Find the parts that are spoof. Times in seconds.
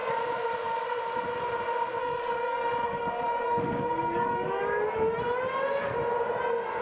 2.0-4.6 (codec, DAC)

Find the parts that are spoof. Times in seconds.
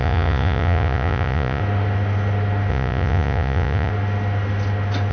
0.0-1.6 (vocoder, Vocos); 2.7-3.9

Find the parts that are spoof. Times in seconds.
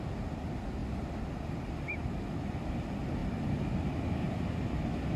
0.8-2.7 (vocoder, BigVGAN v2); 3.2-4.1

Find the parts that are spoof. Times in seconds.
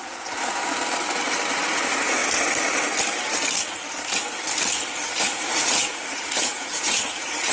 0.0-0.6 (vocoder, Vocos); 1.5-2.2; 5.1-7.5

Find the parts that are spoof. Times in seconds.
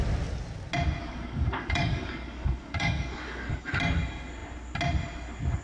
1.0-3.7 (codec, DAC)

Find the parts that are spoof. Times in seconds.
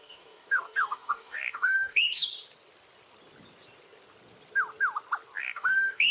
0.0-2.3 (codec, DAC); 5.4-6.1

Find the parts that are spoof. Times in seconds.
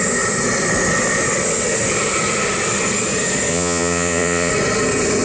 3.5-4.5 (vocoder, Vocos)